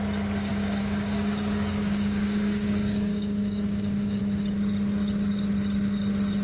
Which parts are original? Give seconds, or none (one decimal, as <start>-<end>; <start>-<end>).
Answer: 0.0-0.5; 4.2-6.4